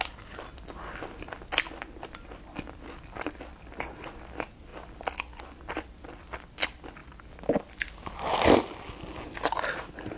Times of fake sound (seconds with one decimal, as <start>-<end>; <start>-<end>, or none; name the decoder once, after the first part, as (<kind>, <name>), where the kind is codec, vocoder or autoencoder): none